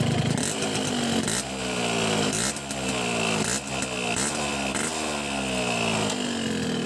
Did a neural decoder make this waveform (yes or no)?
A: no